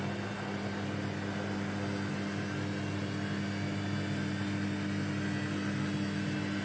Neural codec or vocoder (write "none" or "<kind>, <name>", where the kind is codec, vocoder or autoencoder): none